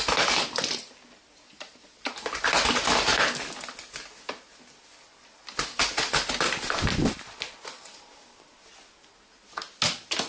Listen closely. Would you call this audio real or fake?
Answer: real